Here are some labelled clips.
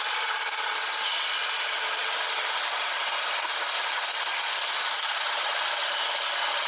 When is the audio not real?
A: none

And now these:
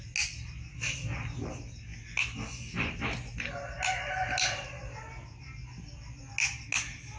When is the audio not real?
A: none

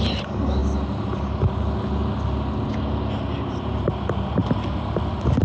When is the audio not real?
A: none

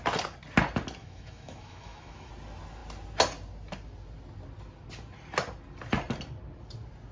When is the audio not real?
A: 1.0-2.3 (autoencoder, DAC-VAE)

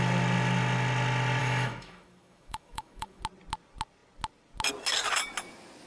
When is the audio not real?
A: 1.4-3.2 (autoencoder, DAC-VAE)

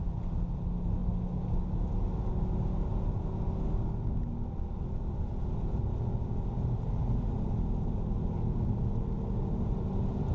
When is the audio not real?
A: none

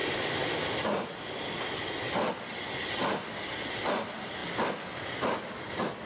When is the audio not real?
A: none

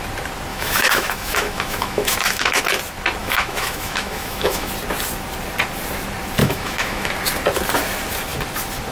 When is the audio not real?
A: 0.5-2.6 (autoencoder, DAC-VAE); 3.2-4.7; 6.4-7.1